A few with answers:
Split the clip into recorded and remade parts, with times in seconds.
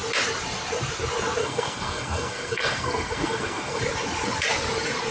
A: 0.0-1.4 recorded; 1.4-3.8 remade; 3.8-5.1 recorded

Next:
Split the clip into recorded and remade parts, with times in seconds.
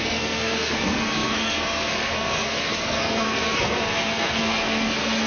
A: 0.0-5.3 remade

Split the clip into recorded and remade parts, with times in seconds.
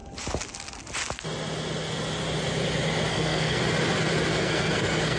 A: 0.0-3.1 recorded; 3.1-3.6 remade; 3.6-4.3 recorded; 4.3-5.2 remade